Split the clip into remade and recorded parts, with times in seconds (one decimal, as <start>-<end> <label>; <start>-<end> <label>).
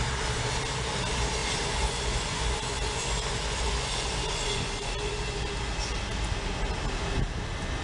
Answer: 0.0-1.4 recorded; 1.4-5.5 remade; 5.5-7.8 recorded